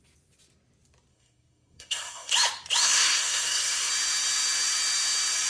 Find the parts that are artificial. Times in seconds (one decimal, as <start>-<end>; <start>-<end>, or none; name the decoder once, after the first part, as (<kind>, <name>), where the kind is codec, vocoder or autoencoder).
1.1-2.3 (codec, SNAC); 2.8-3.9